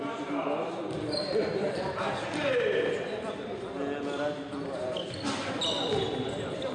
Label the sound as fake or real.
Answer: real